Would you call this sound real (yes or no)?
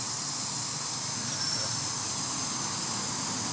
yes